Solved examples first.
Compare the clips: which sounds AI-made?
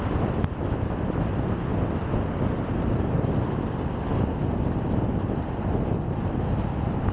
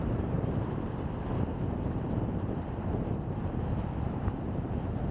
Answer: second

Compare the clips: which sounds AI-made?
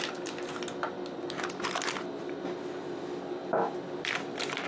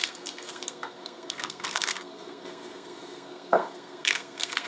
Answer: second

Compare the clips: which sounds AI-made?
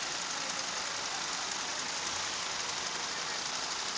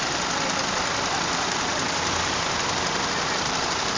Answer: second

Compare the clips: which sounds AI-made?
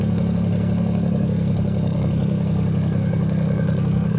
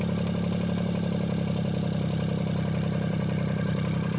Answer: first